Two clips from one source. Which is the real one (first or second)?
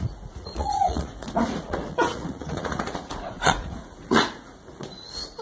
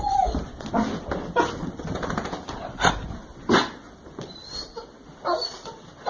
second